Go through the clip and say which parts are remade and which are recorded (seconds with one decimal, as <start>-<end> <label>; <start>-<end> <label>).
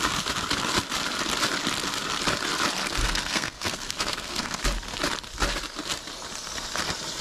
0.0-3.0 recorded; 3.0-4.6 remade; 4.6-7.2 recorded